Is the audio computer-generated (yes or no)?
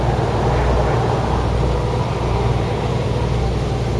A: no